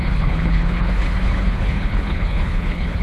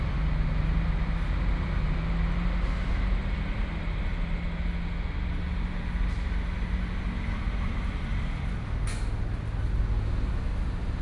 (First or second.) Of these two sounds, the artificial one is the first